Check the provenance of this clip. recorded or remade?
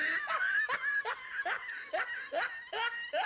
recorded